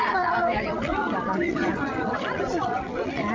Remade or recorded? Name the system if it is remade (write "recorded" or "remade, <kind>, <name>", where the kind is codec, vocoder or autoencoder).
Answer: remade, vocoder, WaveNeXt